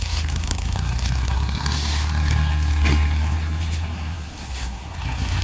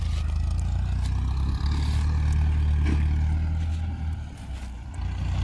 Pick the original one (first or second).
second